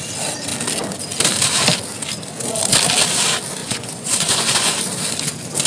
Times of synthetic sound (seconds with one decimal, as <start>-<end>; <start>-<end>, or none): 3.6-4.7